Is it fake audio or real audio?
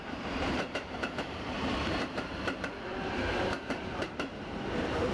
fake